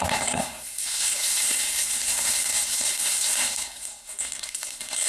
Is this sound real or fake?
fake